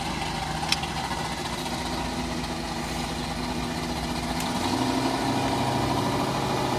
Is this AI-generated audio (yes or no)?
no